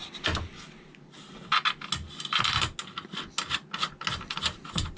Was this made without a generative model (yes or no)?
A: yes